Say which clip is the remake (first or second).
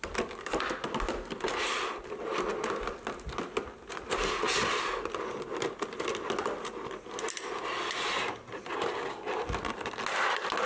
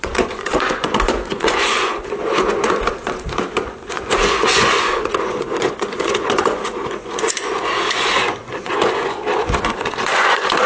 second